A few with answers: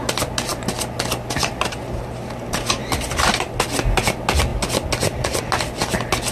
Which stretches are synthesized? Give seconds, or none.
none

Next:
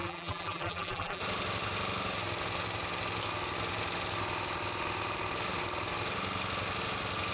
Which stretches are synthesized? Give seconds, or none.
0.0-1.2 (vocoder, BigVGAN v2)

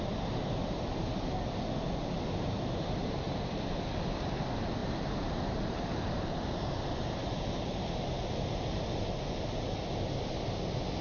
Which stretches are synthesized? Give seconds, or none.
3.0-3.6 (vocoder, BigVGAN v2); 4.8-9.7

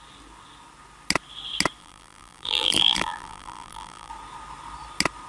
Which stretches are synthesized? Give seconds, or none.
1.8-4.1 (vocoder, BigVGAN v2)

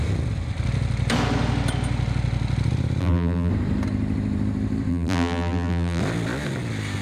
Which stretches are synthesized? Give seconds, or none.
3.0-3.5 (vocoder, BigVGAN v2); 4.9-6.0

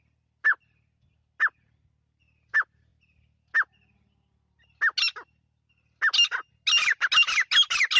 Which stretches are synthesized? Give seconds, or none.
none

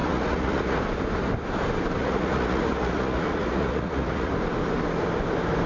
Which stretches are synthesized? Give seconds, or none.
0.0-0.8 (vocoder, Vocos); 2.0-4.3